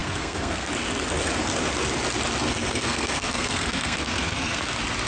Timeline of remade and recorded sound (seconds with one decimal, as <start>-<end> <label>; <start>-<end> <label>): 0.0-0.7 remade; 0.7-2.5 recorded; 2.5-4.6 remade; 4.6-5.1 recorded